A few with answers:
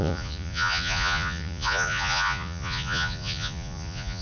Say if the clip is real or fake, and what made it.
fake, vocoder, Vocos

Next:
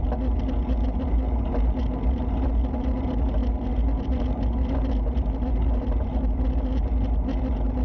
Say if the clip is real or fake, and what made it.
real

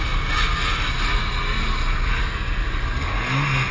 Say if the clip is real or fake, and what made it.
real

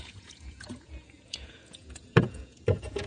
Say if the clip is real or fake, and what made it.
fake, vocoder, Vocos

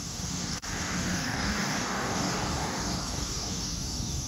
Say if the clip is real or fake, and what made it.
fake, codec, DAC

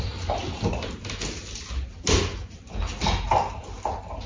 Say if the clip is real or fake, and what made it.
real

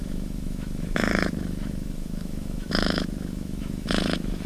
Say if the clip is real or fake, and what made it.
fake, autoencoder, DAC-VAE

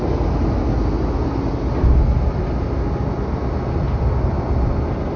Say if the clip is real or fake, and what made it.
real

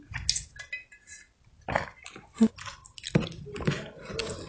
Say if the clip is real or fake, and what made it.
real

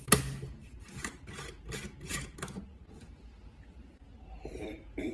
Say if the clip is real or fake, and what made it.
real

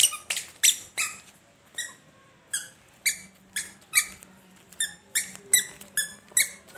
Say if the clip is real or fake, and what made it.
real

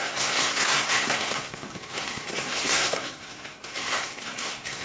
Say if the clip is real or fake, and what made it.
fake, codec, SNAC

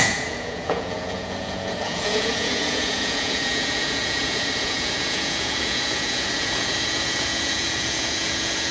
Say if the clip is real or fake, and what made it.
fake, vocoder, Vocos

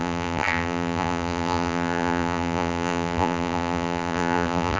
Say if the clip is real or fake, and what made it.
fake, vocoder, BigVGAN v2